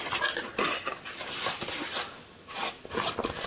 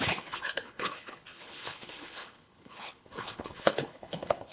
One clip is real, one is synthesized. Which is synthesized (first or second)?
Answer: second